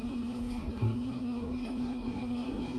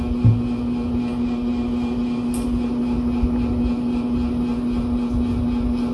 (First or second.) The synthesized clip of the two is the first